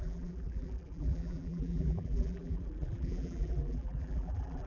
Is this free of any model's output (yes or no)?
no